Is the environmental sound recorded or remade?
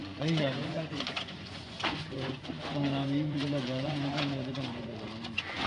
remade